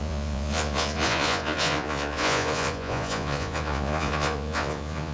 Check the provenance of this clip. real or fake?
fake